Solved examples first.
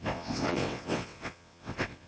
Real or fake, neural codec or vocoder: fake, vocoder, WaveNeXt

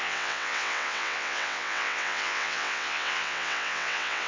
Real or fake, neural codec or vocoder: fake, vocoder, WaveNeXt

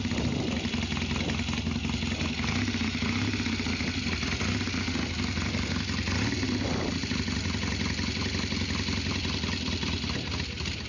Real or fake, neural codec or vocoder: real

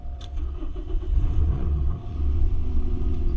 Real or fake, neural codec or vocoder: fake, vocoder, WaveNeXt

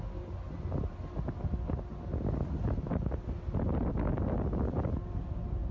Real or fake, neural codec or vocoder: real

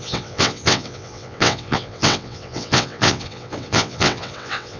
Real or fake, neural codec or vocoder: fake, vocoder, WaveNeXt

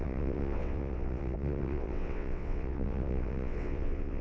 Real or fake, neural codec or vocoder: fake, vocoder, WaveNeXt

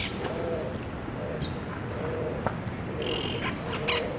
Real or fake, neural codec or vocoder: real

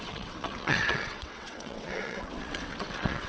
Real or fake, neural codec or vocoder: fake, vocoder, WaveNeXt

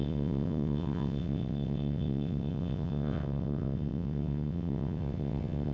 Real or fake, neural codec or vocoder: fake, vocoder, WaveNeXt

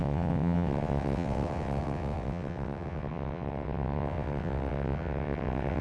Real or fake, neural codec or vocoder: fake, vocoder, WaveNeXt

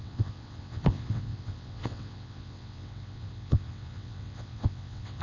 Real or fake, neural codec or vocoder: fake, vocoder, WaveNeXt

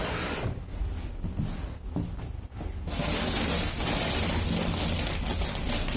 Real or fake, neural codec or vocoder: real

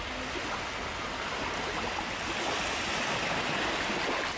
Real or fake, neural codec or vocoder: real